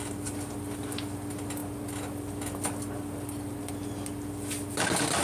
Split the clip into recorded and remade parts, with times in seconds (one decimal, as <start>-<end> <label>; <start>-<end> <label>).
0.0-5.2 recorded